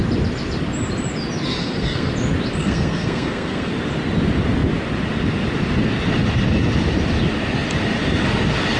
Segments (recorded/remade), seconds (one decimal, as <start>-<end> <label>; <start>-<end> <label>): 0.0-1.6 recorded; 1.6-2.1 remade; 2.1-2.6 recorded; 2.6-3.7 remade; 3.7-8.8 recorded